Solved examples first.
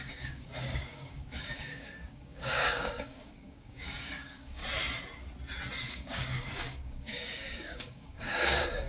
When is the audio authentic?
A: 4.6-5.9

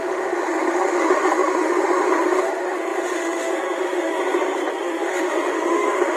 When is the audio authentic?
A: 4.2-4.7

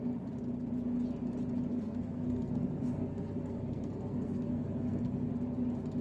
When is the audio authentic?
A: 0.0-1.7; 5.3-6.0